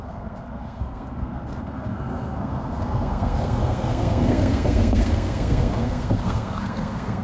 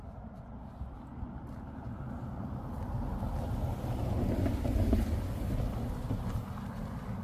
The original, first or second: second